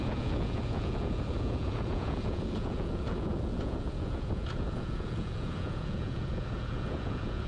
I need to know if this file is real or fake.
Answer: fake